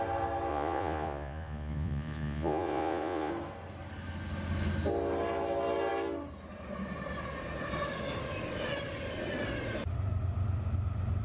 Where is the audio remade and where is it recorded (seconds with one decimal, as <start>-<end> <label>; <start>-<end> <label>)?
0.0-0.5 recorded; 0.5-3.3 remade; 3.3-11.2 recorded